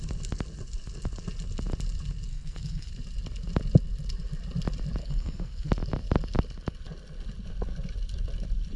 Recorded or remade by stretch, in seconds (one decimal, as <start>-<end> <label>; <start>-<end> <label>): 0.0-2.3 recorded; 2.3-2.9 remade; 2.9-5.0 recorded; 5.0-5.7 remade; 5.7-8.8 recorded